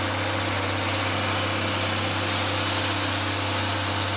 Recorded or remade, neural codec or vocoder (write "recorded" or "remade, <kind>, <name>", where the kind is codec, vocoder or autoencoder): recorded